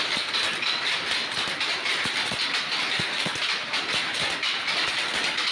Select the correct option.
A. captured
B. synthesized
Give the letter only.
A